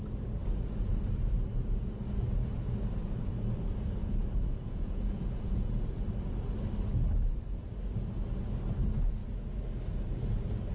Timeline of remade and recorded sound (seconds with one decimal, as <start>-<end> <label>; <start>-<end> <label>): 0.0-1.5 recorded; 1.5-2.0 remade; 2.0-4.0 recorded; 4.0-6.4 remade; 6.4-10.7 recorded